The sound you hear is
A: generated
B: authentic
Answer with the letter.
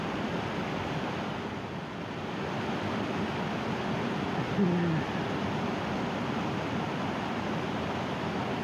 B